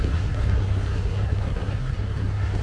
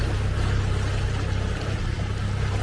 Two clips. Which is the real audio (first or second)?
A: second